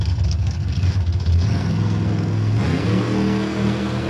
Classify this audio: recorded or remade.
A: remade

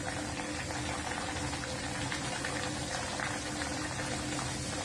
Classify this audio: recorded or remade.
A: recorded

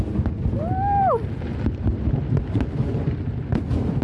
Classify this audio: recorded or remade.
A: recorded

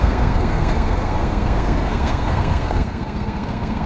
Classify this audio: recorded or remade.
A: remade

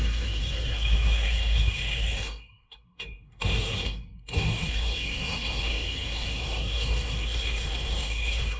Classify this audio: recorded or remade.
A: remade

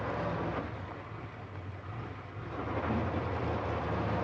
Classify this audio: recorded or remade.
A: recorded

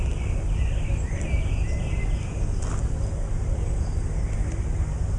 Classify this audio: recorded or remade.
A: recorded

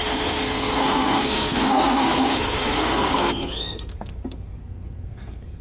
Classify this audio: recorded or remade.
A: remade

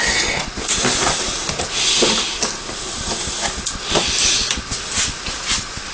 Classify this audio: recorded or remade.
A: recorded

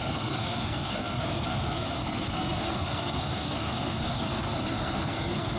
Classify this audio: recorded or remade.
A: remade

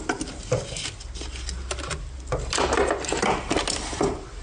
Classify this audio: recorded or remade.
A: recorded